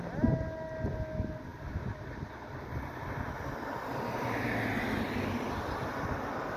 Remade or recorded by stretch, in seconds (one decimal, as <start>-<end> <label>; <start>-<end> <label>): 0.0-6.6 recorded